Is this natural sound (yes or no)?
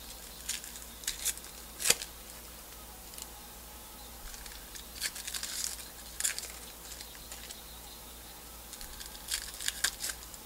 yes